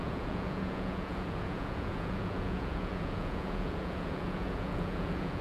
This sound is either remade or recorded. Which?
remade